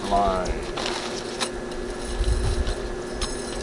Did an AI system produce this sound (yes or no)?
no